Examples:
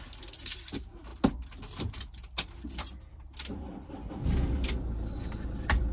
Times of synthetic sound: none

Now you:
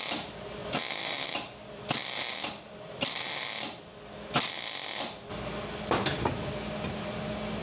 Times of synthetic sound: 0.6-2.3 (vocoder, BigVGAN v2)

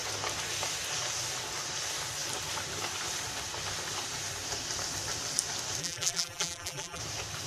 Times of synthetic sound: 5.8-7.0 (vocoder, BigVGAN v2)

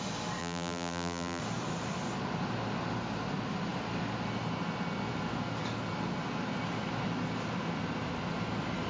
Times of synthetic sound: 0.4-1.4 (vocoder, BigVGAN v2)

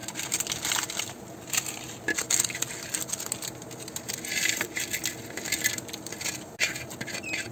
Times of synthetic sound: none

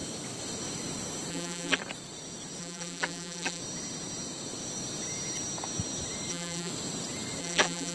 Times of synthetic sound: 1.3-1.8 (vocoder, BigVGAN v2); 2.6-3.6; 6.3-6.7; 7.4-7.9

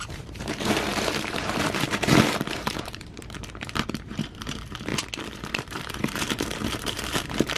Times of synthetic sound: 0.0-4.9 (vocoder, BigVGAN v2); 5.5-7.6